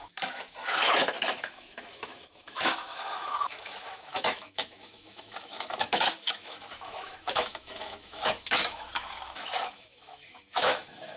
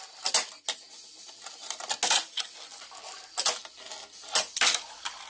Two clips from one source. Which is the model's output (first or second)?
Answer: first